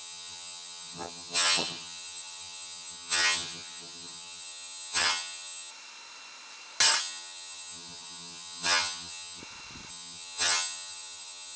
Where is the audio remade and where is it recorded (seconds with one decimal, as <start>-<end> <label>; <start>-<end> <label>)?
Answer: 0.0-5.7 remade; 5.7-7.0 recorded; 7.0-9.4 remade; 9.4-9.9 recorded; 9.9-11.6 remade